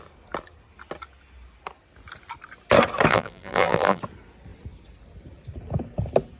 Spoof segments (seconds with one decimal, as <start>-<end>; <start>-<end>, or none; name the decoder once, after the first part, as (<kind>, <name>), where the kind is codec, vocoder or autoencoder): 3.1-4.0 (vocoder, BigVGAN v2)